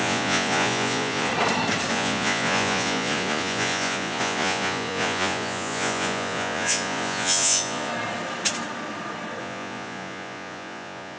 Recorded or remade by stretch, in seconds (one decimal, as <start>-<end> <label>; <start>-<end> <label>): 0.0-1.3 remade; 1.3-1.9 recorded; 1.9-7.9 remade; 7.9-9.4 recorded; 9.4-11.2 remade